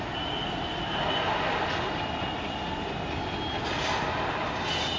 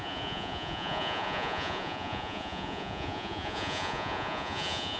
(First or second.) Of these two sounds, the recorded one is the first